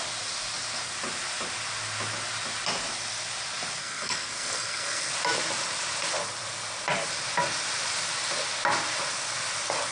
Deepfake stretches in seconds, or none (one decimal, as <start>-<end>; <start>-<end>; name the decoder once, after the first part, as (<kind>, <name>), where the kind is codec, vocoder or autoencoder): 3.8-5.1 (codec, SNAC)